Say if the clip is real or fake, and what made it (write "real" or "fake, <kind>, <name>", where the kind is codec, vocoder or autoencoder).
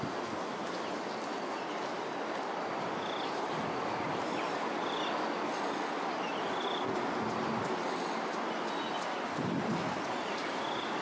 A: real